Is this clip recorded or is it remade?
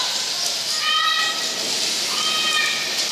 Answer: recorded